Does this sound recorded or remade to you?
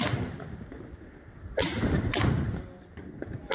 recorded